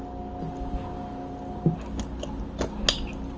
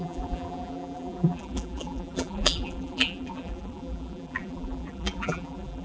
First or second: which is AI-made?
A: second